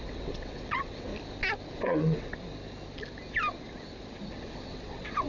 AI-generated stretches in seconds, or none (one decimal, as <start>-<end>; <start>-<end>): 0.0-1.1; 1.7-2.3; 4.3-5.3